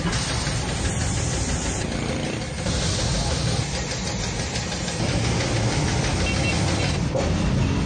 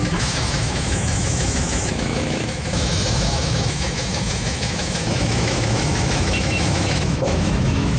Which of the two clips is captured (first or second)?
first